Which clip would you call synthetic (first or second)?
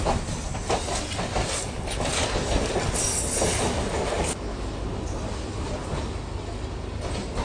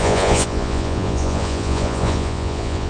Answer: second